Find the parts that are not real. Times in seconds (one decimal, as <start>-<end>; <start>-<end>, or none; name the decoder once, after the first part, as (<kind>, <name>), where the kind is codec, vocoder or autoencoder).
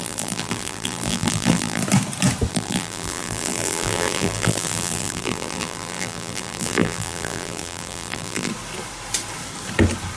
0.0-1.8 (vocoder, BigVGAN v2); 2.5-8.5